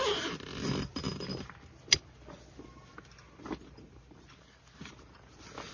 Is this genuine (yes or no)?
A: yes